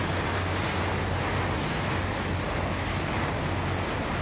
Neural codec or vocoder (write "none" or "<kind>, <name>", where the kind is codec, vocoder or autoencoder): none